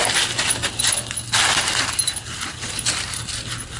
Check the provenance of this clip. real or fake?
real